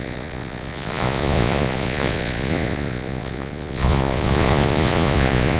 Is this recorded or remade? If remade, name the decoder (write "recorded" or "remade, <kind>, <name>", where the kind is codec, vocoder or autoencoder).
remade, vocoder, Vocos